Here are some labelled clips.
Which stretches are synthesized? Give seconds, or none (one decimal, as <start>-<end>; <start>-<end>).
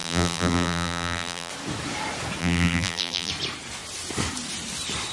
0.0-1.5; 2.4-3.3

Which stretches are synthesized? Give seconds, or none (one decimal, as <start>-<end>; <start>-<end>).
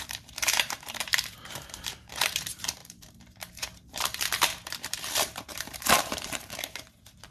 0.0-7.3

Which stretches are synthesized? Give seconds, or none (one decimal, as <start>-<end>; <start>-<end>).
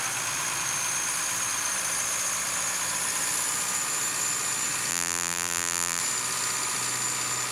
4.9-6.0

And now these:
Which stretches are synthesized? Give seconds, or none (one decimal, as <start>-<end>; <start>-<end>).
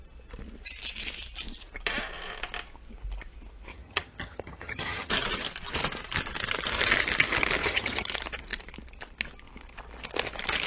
3.7-5.1; 7.6-8.1